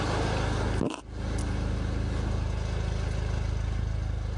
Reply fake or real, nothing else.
real